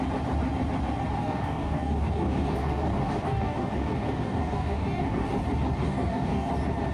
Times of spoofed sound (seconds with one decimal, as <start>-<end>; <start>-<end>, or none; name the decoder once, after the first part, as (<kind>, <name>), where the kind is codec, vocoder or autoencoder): 1.2-5.3 (codec, DAC); 5.8-6.5